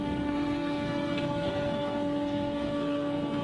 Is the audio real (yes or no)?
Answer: no